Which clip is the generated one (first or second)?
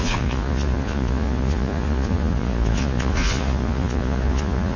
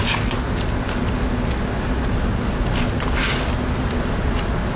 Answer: first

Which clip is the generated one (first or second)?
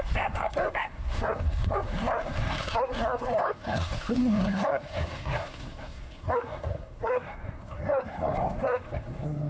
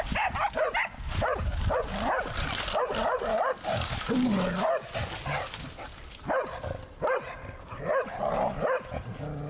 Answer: first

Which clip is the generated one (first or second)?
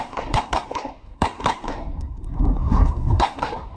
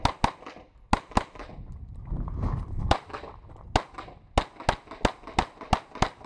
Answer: first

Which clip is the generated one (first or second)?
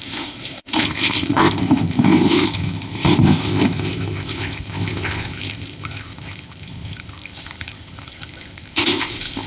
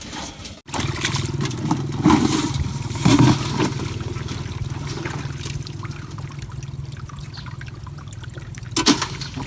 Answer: first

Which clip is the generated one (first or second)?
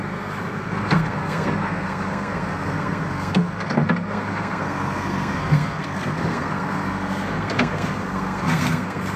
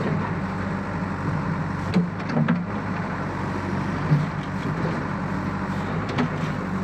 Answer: first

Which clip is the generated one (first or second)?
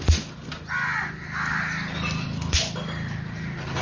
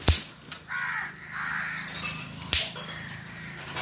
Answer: second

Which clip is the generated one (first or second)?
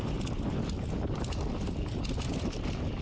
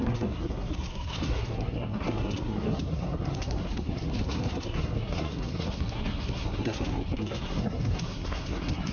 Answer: second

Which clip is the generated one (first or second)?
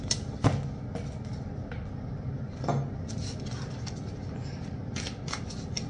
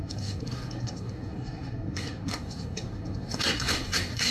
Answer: second